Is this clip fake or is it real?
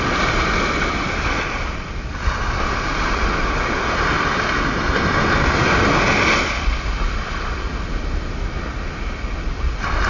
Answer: real